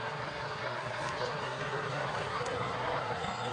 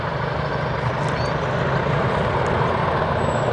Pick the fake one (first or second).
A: first